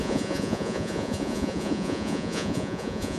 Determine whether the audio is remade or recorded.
remade